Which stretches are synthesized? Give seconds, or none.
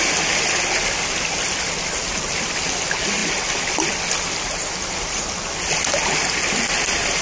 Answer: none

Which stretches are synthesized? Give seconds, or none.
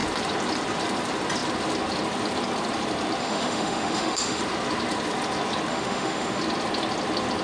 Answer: 3.2-4.4 (autoencoder, DAC-VAE); 5.7-6.4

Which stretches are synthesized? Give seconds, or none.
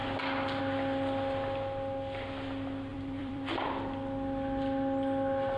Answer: 2.9-3.7 (vocoder, BigVGAN v2)